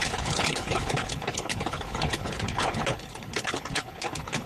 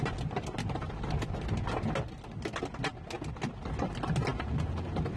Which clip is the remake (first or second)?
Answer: first